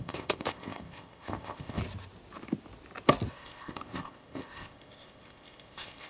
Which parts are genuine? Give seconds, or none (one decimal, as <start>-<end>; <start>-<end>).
1.8-3.3